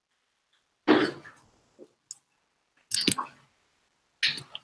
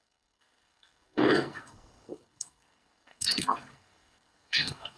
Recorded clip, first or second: first